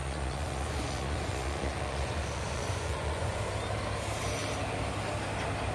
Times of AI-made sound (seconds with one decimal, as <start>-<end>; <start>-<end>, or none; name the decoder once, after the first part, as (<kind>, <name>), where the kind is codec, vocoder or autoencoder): 0.0-3.4 (vocoder, Vocos)